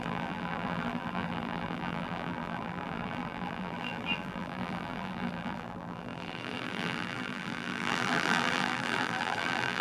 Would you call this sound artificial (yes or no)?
yes